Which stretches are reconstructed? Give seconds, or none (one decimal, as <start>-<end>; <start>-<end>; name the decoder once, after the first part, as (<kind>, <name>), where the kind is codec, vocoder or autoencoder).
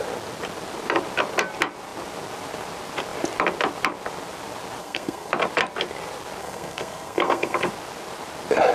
4.8-5.3 (codec, SNAC); 6.4-7.7